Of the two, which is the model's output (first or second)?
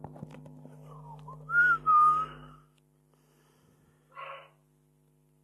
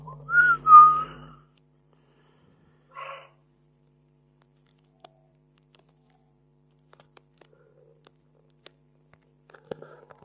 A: second